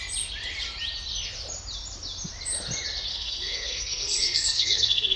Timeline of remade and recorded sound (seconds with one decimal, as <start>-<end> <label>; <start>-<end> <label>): 0.0-3.1 recorded; 3.1-5.2 remade